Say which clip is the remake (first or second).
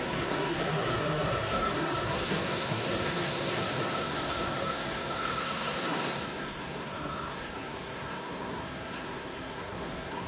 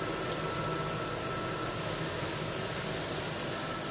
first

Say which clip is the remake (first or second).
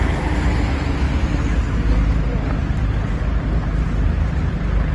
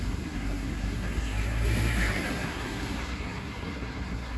second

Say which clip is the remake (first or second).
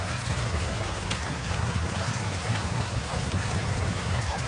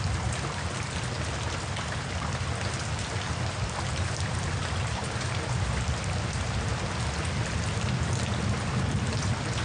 first